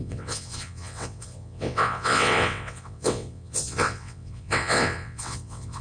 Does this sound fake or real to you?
fake